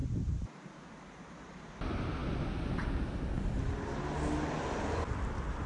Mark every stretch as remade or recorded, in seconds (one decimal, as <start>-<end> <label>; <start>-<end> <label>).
0.0-1.7 remade; 1.7-5.7 recorded